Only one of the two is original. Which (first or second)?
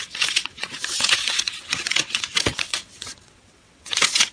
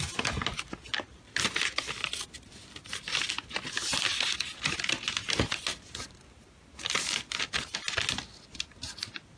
second